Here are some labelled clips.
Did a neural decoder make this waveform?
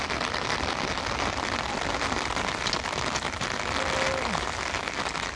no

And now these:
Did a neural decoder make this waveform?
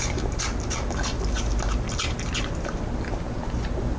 no